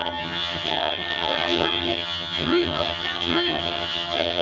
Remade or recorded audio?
remade